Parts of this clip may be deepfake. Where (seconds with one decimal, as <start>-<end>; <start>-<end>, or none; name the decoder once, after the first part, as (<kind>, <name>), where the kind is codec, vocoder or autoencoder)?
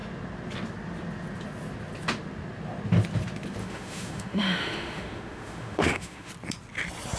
3.6-6.3 (autoencoder, DAC-VAE)